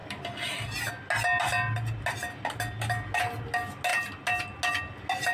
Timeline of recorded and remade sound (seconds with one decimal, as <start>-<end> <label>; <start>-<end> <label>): 0.0-5.3 recorded